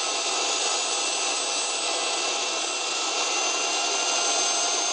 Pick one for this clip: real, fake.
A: real